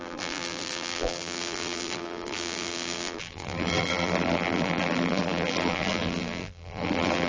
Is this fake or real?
fake